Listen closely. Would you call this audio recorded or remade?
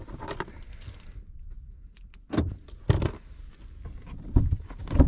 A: recorded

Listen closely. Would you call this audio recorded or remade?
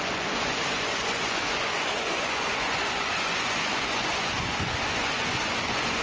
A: remade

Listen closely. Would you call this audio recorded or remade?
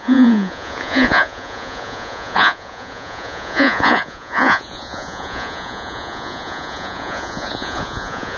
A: remade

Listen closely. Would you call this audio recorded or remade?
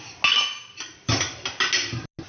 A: recorded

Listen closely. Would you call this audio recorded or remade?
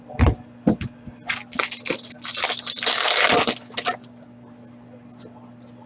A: recorded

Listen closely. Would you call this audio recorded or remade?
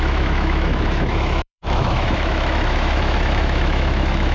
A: remade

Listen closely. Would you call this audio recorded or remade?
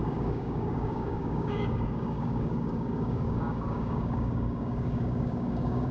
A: remade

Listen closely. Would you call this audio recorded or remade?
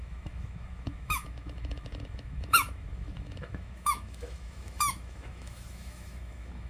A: remade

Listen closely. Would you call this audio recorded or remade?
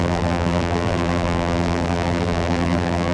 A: remade